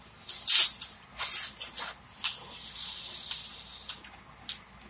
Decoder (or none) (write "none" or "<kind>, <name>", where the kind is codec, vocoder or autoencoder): none